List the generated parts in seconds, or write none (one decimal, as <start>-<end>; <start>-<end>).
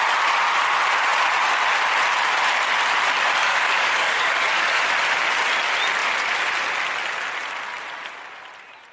3.4-4.8